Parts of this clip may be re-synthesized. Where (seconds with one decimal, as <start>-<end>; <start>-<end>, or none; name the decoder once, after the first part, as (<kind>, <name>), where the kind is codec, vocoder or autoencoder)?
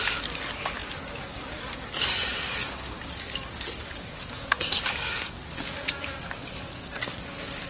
0.0-7.7 (codec, DAC)